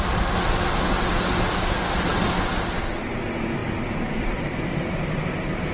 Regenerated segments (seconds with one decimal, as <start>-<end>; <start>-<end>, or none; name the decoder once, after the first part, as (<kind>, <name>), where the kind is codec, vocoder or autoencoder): 3.6-4.6 (vocoder, BigVGAN v2)